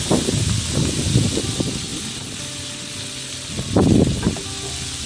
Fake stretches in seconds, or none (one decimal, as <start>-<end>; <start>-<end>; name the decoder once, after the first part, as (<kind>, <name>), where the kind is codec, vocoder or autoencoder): none